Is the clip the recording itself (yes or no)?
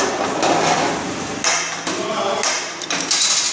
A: yes